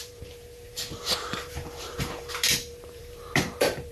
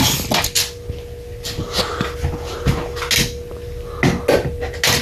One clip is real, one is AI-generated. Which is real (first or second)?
second